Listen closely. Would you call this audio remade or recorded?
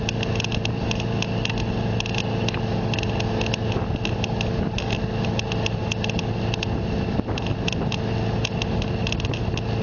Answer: recorded